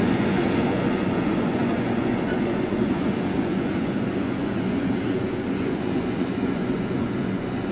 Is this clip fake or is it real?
fake